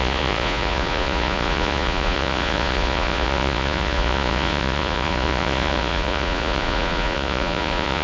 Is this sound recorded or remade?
remade